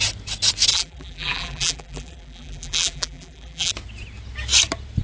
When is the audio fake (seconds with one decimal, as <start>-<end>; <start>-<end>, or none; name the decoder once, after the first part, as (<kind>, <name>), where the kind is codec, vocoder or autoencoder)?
0.7-3.7 (vocoder, BigVGAN v2)